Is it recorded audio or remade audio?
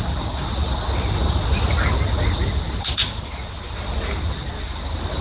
recorded